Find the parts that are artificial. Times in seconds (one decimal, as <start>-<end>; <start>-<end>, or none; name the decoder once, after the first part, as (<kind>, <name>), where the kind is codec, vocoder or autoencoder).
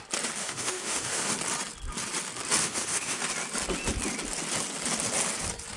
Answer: 0.4-1.3 (autoencoder, DAC-VAE); 2.6-3.2